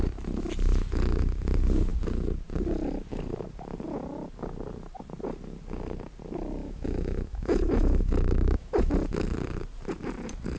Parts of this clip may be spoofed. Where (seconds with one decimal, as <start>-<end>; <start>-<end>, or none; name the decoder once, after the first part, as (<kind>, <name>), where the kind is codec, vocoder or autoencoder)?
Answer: 6.6-8.9 (autoencoder, DAC-VAE)